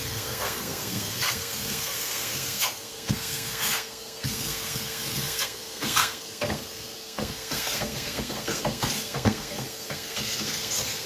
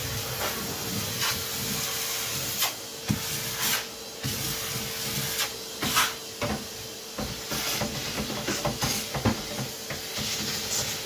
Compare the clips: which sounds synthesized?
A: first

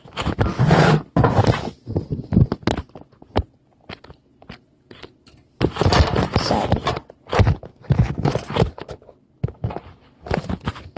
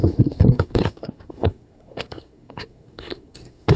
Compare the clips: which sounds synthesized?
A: second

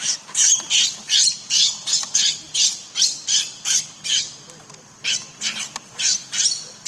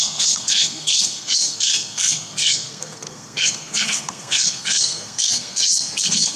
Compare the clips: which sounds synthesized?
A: second